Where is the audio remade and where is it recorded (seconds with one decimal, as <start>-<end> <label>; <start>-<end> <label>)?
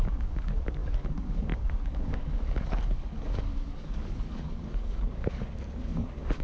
0.0-6.4 remade